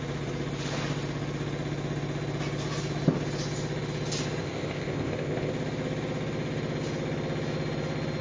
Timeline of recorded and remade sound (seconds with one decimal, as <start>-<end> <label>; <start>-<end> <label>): 0.0-4.4 recorded; 4.4-5.5 remade; 5.5-8.2 recorded